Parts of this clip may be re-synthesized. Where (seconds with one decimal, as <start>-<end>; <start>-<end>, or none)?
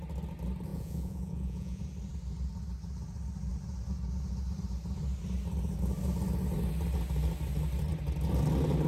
0.7-1.8